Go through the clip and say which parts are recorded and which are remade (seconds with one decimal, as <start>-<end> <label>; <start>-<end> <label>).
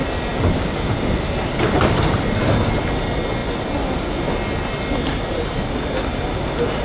0.0-6.8 recorded